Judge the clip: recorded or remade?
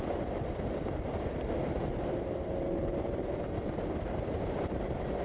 recorded